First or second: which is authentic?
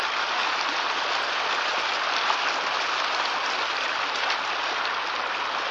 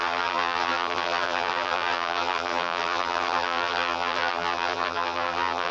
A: first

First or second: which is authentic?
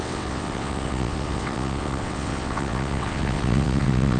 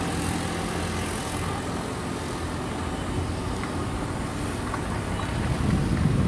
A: second